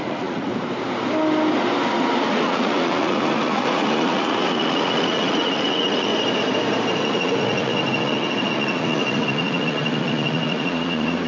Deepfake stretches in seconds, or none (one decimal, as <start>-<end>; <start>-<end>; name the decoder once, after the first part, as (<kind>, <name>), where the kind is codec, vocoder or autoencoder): 0.0-0.5 (vocoder, Vocos); 2.3-6.1; 7.0-11.3